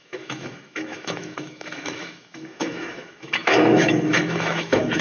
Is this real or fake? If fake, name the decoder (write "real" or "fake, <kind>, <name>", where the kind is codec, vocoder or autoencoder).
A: fake, autoencoder, DAC-VAE